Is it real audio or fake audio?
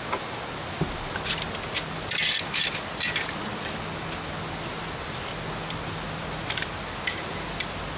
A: real